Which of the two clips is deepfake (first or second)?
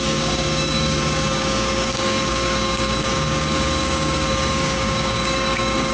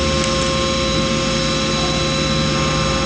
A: first